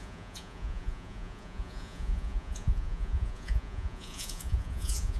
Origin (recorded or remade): remade